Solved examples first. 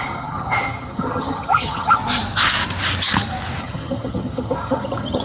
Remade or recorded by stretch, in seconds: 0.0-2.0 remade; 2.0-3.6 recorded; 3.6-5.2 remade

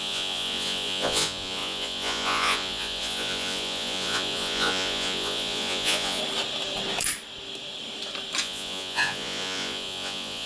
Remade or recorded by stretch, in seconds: 0.0-6.2 remade; 6.2-8.4 recorded; 8.4-10.5 remade

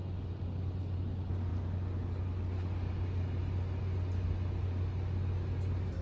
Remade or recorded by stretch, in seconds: 0.0-6.0 recorded

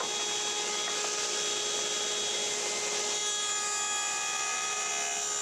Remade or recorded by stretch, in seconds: 0.0-3.2 recorded; 3.2-4.9 remade; 4.9-5.4 recorded

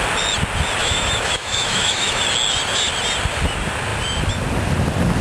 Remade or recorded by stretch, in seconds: 0.0-0.8 recorded; 0.8-2.2 remade; 2.2-5.2 recorded

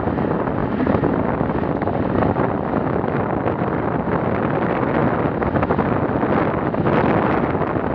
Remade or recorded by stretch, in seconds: 0.0-7.9 recorded

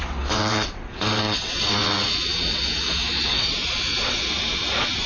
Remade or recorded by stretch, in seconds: 0.0-5.1 remade

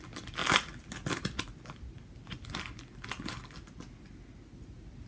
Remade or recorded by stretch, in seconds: 0.0-5.1 recorded